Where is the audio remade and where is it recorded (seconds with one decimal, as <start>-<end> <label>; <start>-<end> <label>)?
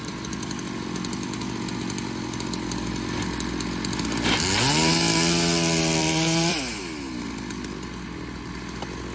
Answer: 0.0-6.0 recorded; 6.0-6.8 remade; 6.8-9.1 recorded